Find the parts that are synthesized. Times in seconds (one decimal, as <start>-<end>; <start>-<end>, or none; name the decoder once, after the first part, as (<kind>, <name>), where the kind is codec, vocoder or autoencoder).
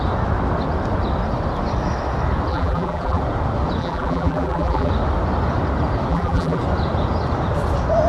2.5-3.2 (vocoder, BigVGAN v2); 3.8-4.9; 6.1-6.6